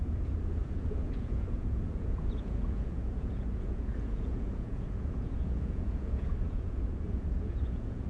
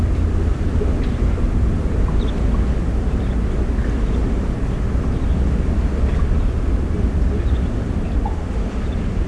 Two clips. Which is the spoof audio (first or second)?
first